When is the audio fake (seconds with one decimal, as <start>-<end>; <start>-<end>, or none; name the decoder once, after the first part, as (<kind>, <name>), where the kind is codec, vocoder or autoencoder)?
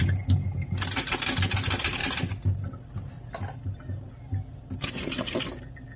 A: none